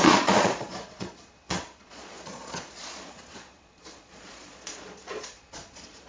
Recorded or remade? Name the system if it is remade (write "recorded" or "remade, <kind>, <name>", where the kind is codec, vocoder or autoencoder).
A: remade, vocoder, Vocos